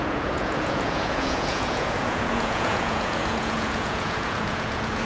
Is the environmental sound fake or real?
fake